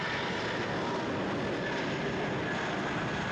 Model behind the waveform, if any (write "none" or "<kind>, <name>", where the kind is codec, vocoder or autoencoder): none